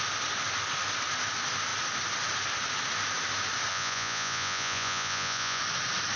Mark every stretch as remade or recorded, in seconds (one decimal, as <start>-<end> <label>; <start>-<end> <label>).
0.0-3.7 recorded; 3.7-5.6 remade; 5.6-6.2 recorded

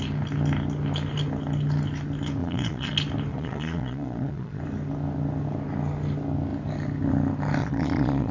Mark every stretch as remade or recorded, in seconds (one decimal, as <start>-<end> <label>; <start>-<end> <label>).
0.0-2.4 recorded; 2.4-2.9 remade; 2.9-3.3 recorded; 3.3-4.6 remade; 4.6-7.6 recorded; 7.6-8.3 remade